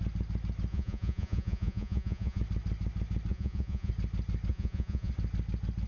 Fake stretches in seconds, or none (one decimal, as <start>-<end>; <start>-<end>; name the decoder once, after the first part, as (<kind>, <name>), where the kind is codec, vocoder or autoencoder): 0.7-2.4 (vocoder, Vocos); 3.3-3.9; 4.5-5.1